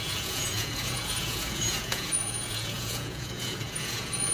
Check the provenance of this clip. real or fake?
fake